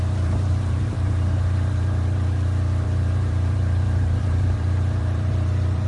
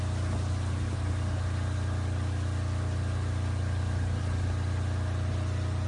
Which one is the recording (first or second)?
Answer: second